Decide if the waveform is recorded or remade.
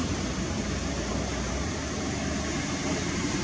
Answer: remade